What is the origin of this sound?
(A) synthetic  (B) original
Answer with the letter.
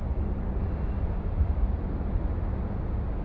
B